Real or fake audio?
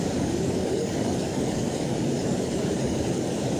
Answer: fake